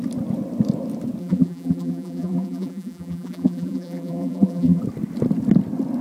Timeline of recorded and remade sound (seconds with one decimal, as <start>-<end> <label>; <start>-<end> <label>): 0.0-1.2 recorded; 1.2-4.8 remade; 4.8-6.0 recorded